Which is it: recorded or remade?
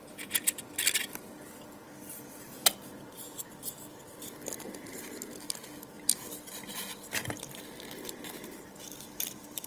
recorded